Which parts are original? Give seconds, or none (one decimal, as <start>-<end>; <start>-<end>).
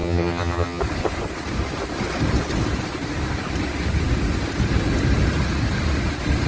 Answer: 0.8-6.5